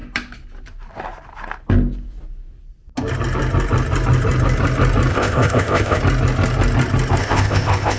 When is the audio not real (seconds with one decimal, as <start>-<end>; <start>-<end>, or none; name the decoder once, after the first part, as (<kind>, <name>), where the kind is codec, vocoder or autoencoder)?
5.1-6.0 (codec, ZipCodec); 7.2-8.0